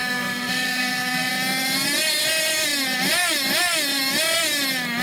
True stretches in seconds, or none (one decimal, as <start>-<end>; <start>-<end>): 1.3-5.0